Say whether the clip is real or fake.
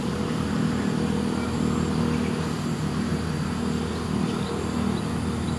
real